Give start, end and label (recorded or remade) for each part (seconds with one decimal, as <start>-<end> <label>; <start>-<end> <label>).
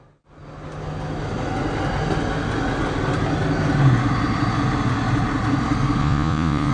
0.0-6.0 recorded; 6.0-6.7 remade